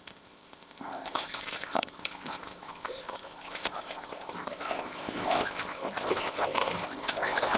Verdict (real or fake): fake